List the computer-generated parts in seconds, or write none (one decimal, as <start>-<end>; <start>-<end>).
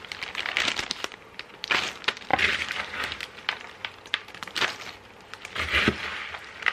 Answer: none